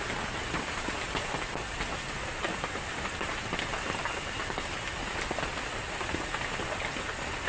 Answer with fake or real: real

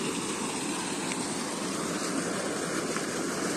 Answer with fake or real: real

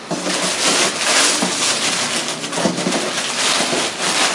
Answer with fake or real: real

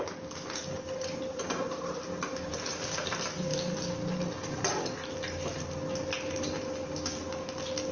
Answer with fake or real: real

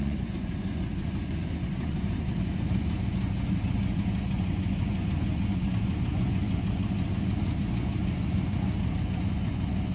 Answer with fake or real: fake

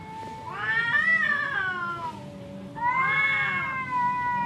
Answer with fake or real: real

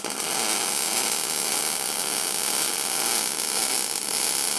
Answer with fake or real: real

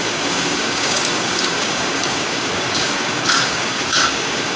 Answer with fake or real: fake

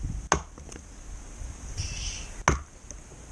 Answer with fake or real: real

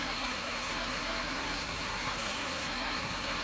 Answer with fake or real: fake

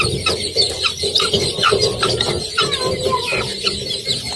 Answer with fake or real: fake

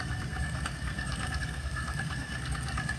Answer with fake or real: fake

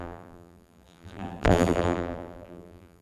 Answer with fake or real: fake